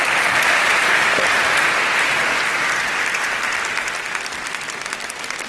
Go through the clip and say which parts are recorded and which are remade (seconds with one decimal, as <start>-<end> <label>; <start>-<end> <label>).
0.0-2.3 recorded; 2.3-3.6 remade; 3.6-5.5 recorded